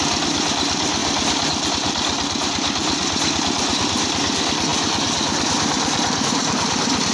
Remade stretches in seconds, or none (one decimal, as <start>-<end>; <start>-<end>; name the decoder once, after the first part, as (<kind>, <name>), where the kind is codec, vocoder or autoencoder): 0.0-7.1 (vocoder, BigVGAN v2)